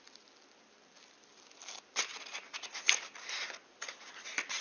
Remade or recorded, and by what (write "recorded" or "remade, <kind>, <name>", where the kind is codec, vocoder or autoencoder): recorded